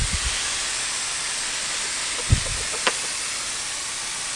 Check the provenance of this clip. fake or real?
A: real